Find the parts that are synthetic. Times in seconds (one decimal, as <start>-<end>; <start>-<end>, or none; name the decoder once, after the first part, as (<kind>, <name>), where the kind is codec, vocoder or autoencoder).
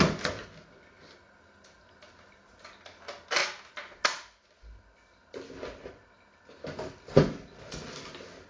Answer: none